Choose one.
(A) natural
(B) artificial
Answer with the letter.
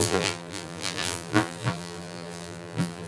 B